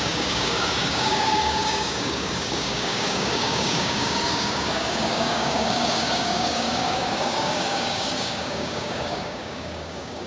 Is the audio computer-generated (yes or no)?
yes